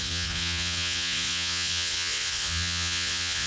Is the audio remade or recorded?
remade